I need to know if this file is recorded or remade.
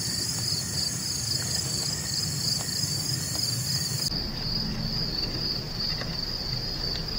recorded